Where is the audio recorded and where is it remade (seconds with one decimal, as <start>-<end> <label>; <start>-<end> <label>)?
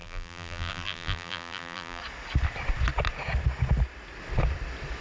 0.0-2.0 remade; 2.0-5.0 recorded